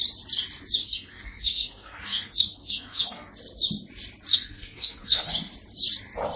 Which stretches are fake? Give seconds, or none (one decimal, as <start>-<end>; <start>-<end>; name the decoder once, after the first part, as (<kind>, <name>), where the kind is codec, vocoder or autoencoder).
0.8-3.3 (codec, SNAC); 4.3-5.3